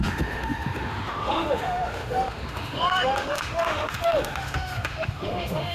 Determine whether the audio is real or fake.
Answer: fake